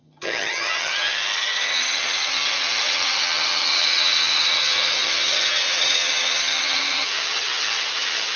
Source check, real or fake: fake